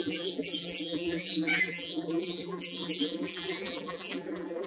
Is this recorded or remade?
remade